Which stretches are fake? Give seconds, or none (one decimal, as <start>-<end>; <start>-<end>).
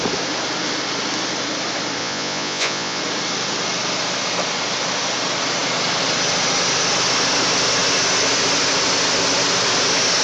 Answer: 2.0-3.0